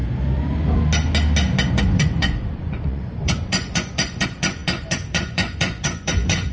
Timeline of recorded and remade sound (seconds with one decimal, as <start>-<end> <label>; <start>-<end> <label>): 0.0-1.7 recorded; 1.7-6.5 remade